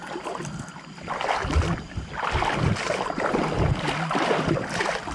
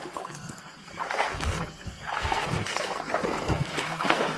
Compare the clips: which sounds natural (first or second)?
first